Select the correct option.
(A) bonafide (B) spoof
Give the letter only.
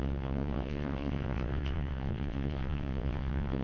B